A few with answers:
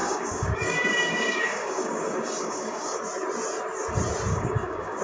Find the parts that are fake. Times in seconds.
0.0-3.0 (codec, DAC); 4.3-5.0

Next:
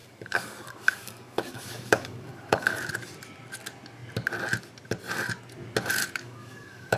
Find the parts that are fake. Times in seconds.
0.0-2.9 (codec, DAC); 6.0-7.0

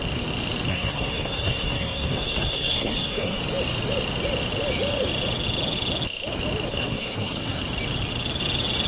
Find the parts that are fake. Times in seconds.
0.7-3.4 (codec, SNAC); 6.7-7.6

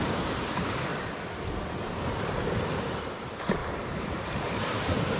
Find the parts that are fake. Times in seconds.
0.0-0.9 (vocoder, BigVGAN v2); 2.6-3.6; 4.2-5.2

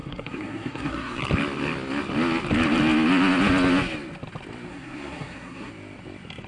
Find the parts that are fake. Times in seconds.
0.0-1.2 (codec, SNAC); 4.7-5.7